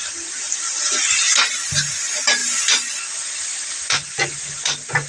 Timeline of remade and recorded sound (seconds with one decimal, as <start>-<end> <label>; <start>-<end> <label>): 0.0-5.1 recorded